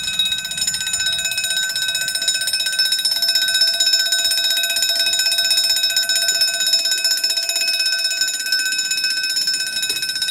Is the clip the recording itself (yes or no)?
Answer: yes